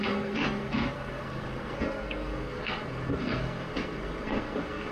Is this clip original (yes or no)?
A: no